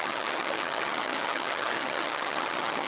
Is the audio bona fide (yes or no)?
no